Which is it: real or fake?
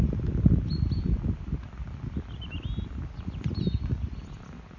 real